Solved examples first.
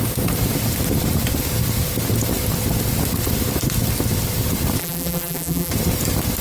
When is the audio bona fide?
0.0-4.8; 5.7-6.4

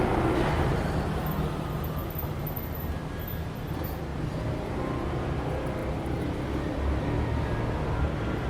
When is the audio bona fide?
0.0-4.1; 4.7-8.5

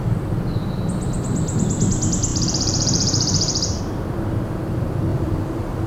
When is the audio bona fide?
0.0-2.3; 3.8-5.1

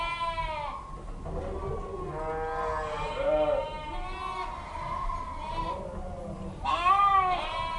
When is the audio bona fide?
0.0-7.8

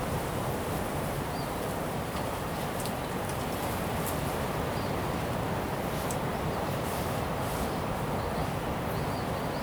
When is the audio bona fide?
3.3-6.3; 8.4-9.6

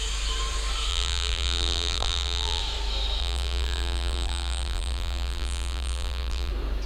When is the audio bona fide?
0.0-0.9; 2.6-3.2; 6.5-6.9